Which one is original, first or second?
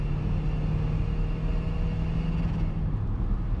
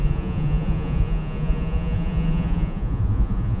first